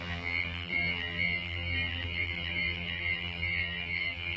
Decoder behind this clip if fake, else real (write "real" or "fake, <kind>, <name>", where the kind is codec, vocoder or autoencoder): fake, vocoder, BigVGAN v2